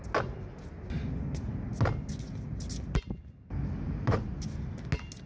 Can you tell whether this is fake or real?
real